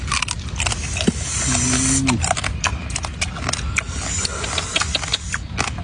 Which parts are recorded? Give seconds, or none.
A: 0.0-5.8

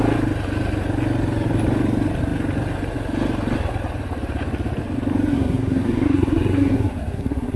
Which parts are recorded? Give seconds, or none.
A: 0.0-5.3

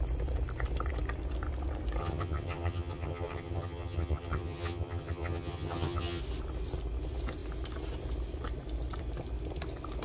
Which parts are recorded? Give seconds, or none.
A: 0.0-2.0; 6.2-10.0

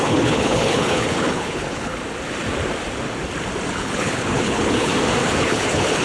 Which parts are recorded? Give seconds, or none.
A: 1.9-3.7; 4.9-5.4

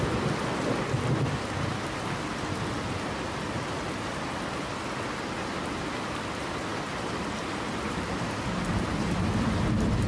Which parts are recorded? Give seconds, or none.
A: 0.0-10.1